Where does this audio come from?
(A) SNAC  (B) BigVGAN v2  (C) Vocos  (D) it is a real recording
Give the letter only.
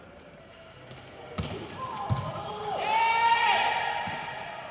D